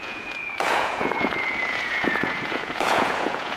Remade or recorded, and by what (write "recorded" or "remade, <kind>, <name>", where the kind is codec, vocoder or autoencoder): remade, vocoder, Vocos